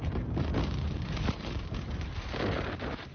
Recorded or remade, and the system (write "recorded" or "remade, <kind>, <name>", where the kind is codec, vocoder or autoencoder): remade, vocoder, BigVGAN v2